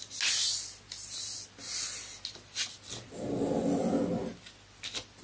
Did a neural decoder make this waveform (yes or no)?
no